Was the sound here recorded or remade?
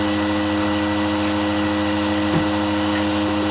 recorded